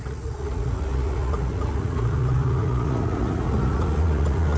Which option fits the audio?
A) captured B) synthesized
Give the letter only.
B